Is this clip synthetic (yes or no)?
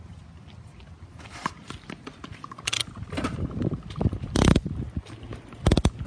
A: no